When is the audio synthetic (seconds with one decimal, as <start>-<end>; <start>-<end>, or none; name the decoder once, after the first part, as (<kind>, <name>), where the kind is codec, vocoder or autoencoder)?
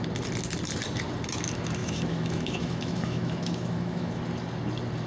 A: 1.8-4.2 (autoencoder, DAC-VAE)